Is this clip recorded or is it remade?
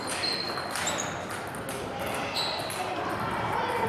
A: recorded